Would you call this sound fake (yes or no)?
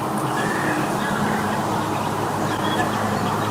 yes